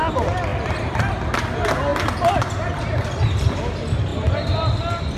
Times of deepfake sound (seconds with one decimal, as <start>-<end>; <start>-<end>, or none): none